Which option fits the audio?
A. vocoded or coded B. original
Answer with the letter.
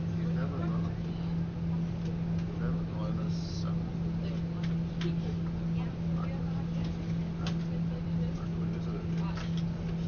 B